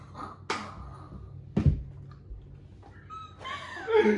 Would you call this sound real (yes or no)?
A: yes